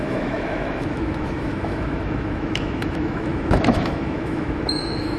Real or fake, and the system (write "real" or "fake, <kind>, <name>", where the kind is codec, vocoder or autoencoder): fake, autoencoder, DAC-VAE